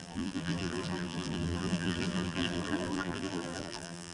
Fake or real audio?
fake